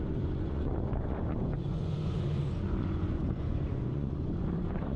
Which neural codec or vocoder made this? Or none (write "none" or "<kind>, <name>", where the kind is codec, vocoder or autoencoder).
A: vocoder, Vocos